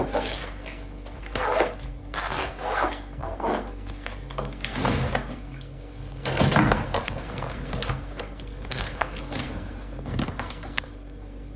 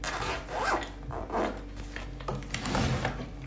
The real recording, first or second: second